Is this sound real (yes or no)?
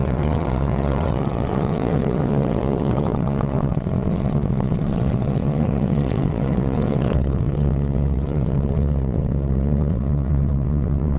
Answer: no